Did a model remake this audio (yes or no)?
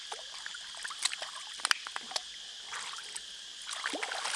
no